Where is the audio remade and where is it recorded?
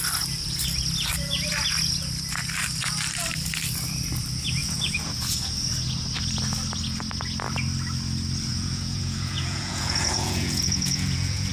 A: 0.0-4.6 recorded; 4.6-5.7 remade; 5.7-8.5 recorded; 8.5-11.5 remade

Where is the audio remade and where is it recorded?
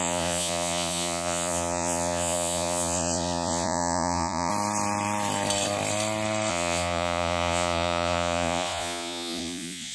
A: 0.0-4.5 remade; 4.5-6.5 recorded; 6.5-9.9 remade